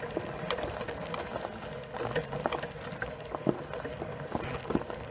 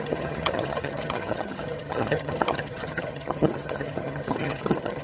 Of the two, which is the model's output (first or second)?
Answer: second